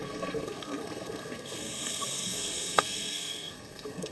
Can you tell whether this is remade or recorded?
remade